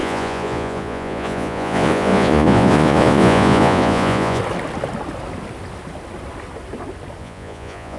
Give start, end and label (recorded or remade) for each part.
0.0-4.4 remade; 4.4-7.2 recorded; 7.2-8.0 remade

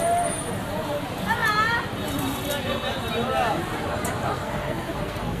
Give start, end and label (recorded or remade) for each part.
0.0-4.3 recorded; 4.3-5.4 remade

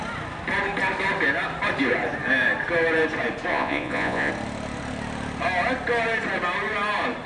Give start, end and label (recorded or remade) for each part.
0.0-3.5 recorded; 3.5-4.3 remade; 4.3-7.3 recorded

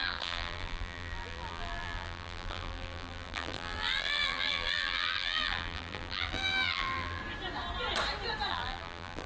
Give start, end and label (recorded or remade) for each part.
0.0-7.2 remade; 7.2-8.5 recorded; 8.5-9.3 remade

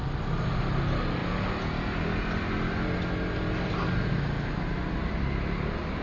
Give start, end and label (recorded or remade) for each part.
0.0-6.0 recorded